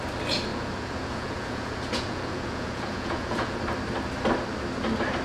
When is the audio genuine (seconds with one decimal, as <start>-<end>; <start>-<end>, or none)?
0.0-0.5; 3.6-5.2